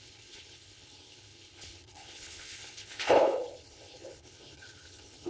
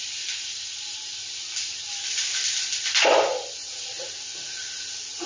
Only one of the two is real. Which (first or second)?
second